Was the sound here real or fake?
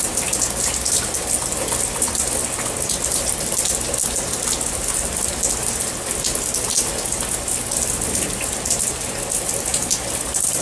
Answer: real